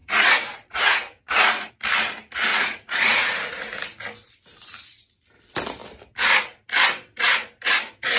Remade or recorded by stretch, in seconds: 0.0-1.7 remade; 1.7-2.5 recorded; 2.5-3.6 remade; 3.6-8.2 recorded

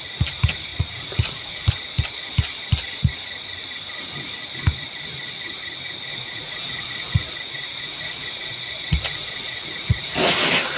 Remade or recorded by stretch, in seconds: 0.0-0.7 recorded; 0.7-1.7 remade; 1.7-6.1 recorded; 6.1-10.1 remade; 10.1-10.8 recorded

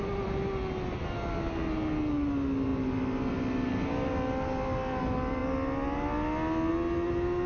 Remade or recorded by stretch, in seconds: 0.0-7.5 recorded

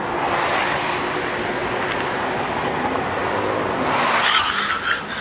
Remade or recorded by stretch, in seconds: 0.0-5.2 recorded

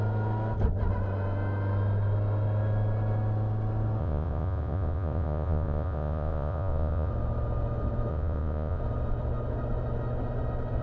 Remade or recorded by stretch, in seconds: 0.0-4.0 recorded; 4.0-7.1 remade; 7.1-8.1 recorded; 8.1-8.8 remade; 8.8-10.8 recorded

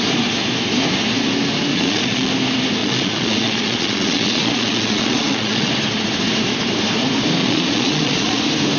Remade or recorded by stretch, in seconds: 0.0-1.7 recorded; 1.7-2.3 remade; 2.3-2.8 recorded; 2.8-5.7 remade; 5.7-7.4 recorded; 7.4-8.4 remade; 8.4-8.8 recorded

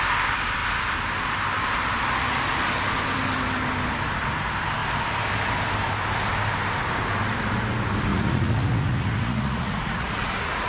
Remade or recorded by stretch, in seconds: 0.0-8.1 recorded; 8.1-10.7 remade

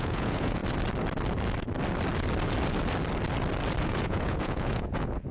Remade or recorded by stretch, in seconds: 0.0-0.6 remade; 0.6-3.8 recorded; 3.8-5.3 remade